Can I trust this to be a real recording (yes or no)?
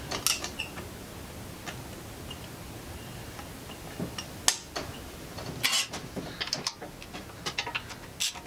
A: yes